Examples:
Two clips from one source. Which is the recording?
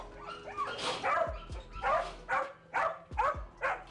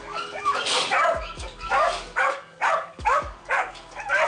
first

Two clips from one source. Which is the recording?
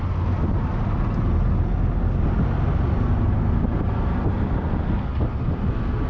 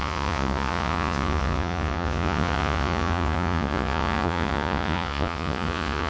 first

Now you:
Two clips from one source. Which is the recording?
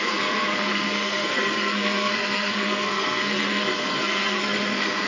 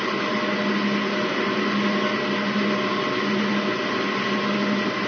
second